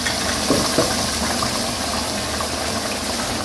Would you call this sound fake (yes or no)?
no